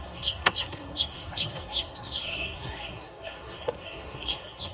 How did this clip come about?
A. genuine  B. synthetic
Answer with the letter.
B